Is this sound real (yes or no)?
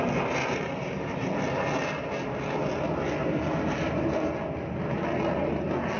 yes